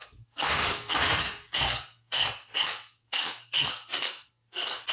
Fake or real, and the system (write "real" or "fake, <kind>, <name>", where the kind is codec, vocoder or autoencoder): fake, codec, SNAC